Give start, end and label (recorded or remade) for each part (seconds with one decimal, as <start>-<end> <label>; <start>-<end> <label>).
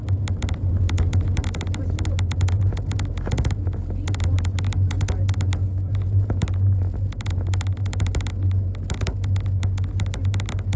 0.0-10.8 recorded